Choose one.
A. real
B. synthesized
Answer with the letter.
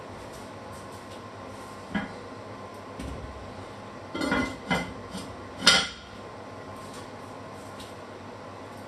A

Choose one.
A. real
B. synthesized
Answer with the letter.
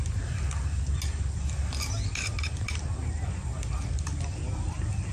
A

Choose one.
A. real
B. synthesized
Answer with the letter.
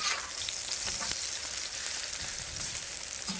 B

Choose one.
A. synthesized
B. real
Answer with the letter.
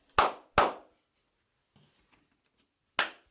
B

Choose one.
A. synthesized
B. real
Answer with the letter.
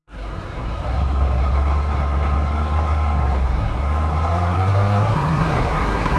A